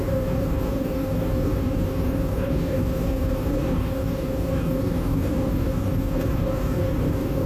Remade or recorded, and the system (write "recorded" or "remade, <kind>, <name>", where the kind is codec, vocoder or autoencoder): remade, codec, DAC